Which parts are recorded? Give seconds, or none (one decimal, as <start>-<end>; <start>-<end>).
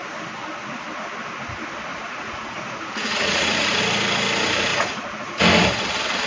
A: 0.0-1.9; 3.8-4.7; 5.4-6.3